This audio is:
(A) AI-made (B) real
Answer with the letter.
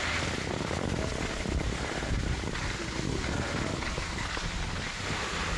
B